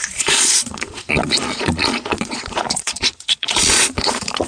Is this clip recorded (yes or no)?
no